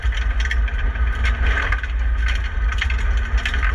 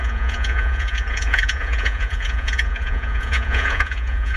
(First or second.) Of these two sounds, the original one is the first